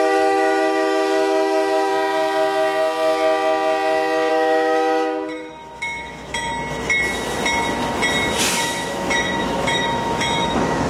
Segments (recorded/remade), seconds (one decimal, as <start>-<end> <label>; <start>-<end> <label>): 0.0-1.9 remade; 1.9-4.3 recorded; 4.3-6.5 remade; 6.5-8.5 recorded; 8.5-10.9 remade